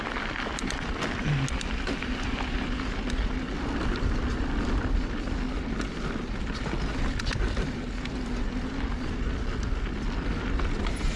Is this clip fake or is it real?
real